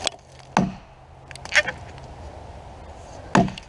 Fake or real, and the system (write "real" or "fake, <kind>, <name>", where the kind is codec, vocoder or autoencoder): real